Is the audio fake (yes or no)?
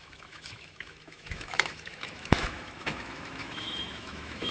yes